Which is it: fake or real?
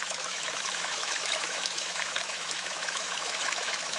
fake